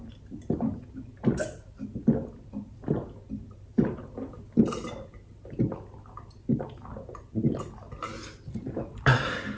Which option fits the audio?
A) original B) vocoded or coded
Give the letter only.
A